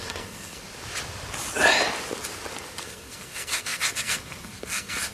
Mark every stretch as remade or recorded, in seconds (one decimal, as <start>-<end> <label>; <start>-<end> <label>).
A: 0.0-0.6 remade; 0.6-2.8 recorded; 2.8-5.1 remade

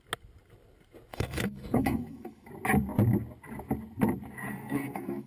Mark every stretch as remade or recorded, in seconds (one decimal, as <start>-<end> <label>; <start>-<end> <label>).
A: 0.0-1.1 recorded; 1.1-2.5 remade; 2.5-4.5 recorded; 4.5-5.3 remade

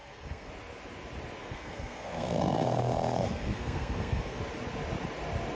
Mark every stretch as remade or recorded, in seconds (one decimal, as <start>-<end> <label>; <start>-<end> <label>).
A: 0.0-0.5 remade; 0.5-1.4 recorded; 1.4-4.4 remade; 4.4-5.5 recorded